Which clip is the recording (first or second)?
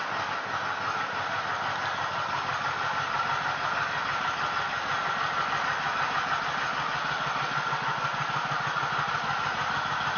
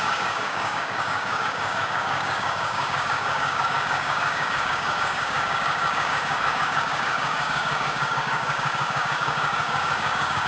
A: first